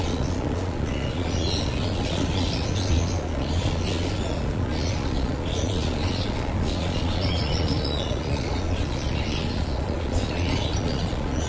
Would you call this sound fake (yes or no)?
yes